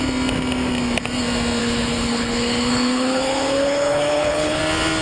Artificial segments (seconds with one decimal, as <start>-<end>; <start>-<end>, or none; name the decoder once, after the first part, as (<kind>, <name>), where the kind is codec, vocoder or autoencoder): 1.6-4.6 (codec, HILCodec)